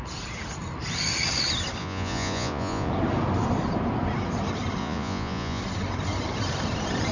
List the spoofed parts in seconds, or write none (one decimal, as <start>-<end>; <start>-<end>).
1.8-2.9; 4.8-5.6